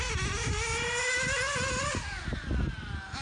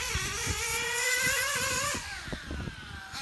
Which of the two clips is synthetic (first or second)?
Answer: second